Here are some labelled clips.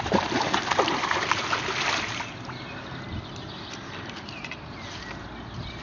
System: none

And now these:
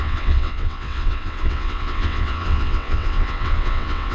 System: vocoder, WaveNeXt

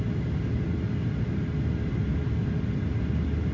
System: none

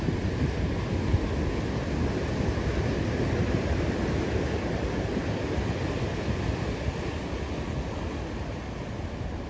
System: none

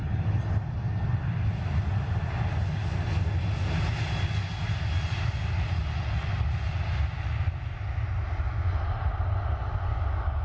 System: none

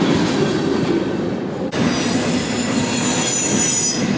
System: none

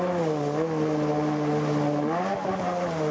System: none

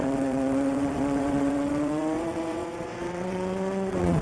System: vocoder, WaveNeXt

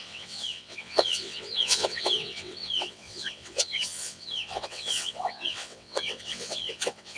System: vocoder, WaveNeXt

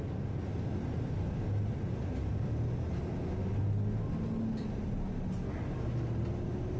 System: none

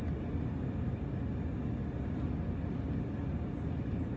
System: none